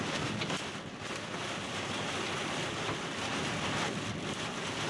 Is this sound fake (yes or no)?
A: no